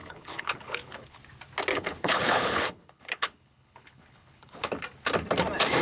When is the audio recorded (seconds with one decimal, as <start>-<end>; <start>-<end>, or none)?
1.2-1.7; 4.7-5.8